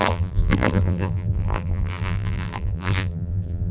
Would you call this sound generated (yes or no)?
yes